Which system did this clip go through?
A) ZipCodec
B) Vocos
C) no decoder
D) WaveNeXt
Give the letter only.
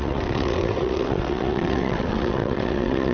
D